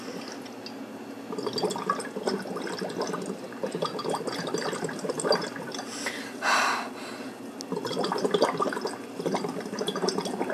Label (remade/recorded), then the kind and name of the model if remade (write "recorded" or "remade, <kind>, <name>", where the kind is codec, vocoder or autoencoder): recorded